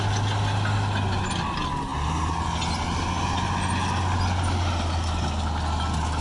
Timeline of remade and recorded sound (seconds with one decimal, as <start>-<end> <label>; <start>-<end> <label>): 0.0-6.2 recorded